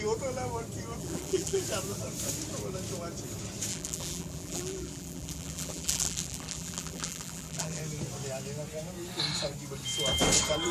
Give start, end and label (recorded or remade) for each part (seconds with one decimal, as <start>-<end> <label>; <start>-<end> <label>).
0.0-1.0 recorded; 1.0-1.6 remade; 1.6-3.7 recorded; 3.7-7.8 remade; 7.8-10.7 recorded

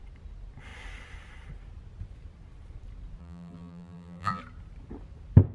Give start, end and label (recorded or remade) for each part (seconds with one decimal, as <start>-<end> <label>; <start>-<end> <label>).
0.0-3.2 recorded; 3.2-4.4 remade; 4.4-5.5 recorded

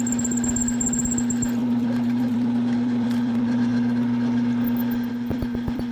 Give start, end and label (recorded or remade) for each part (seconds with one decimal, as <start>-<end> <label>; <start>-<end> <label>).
0.0-3.7 remade; 3.7-5.1 recorded; 5.1-5.9 remade

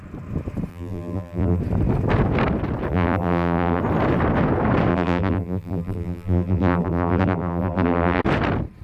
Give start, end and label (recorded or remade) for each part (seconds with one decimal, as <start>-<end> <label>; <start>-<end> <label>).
0.0-0.7 recorded; 0.7-1.6 remade; 1.6-2.9 recorded; 2.9-3.8 remade; 3.8-4.9 recorded; 4.9-8.2 remade; 8.2-8.8 recorded

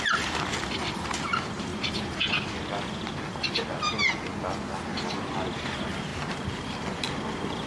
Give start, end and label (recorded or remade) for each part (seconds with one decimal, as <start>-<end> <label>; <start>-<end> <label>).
0.0-7.7 recorded

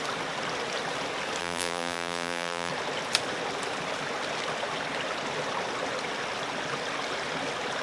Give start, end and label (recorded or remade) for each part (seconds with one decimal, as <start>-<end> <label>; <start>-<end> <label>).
0.0-1.4 recorded; 1.4-2.7 remade; 2.7-7.8 recorded

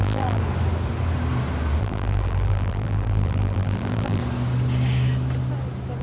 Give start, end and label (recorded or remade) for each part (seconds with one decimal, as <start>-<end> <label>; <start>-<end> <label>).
0.0-0.4 remade; 0.4-1.8 recorded; 1.8-4.2 remade; 4.2-6.0 recorded